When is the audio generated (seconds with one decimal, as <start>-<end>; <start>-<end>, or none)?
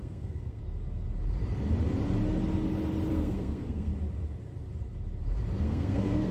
0.0-0.6; 3.1-3.9; 5.6-6.3